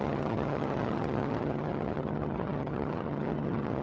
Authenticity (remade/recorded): remade